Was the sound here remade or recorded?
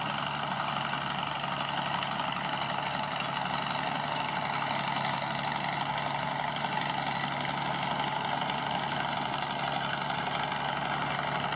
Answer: recorded